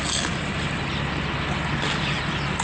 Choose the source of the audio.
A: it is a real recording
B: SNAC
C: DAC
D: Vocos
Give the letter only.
A